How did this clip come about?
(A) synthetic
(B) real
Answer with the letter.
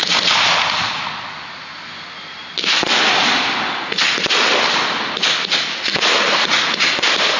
B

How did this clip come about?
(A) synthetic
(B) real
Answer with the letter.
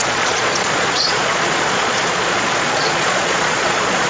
A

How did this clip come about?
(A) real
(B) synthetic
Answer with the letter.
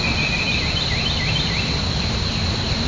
A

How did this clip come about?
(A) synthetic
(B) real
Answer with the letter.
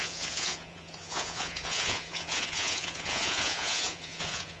A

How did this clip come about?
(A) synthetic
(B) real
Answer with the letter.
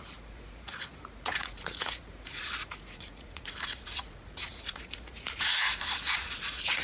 A